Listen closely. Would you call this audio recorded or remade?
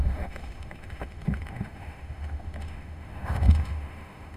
remade